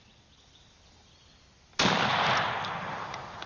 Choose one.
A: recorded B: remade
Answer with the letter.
A